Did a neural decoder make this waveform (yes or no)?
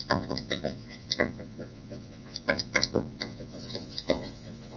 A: yes